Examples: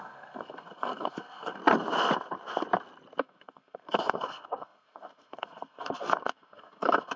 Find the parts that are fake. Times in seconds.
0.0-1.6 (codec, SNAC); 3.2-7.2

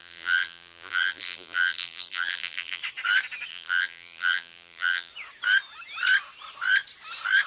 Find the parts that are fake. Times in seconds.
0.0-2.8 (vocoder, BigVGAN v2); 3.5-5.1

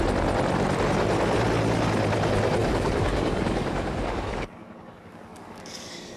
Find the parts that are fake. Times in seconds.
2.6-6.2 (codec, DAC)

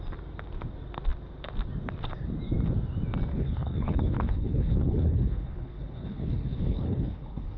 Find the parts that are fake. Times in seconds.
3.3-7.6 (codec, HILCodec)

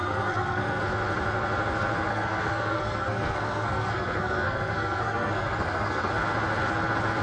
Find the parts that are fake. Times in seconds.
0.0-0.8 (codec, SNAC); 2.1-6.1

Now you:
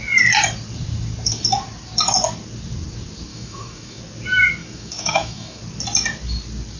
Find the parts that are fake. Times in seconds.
3.3-4.0 (autoencoder, DAC-VAE); 4.6-5.6